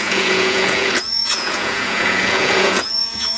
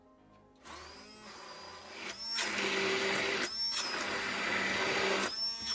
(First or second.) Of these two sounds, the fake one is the first